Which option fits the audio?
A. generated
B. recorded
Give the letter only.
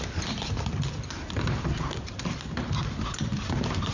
B